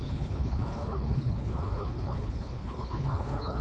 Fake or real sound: fake